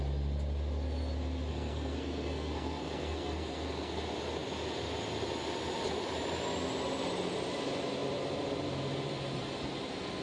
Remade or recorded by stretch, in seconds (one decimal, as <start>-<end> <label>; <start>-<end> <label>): 0.0-1.5 recorded; 1.5-4.0 remade; 4.0-10.2 recorded